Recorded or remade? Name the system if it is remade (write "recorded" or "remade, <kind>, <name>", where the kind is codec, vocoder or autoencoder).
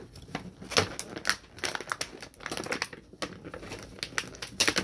recorded